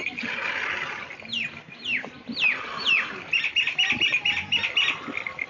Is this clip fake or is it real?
real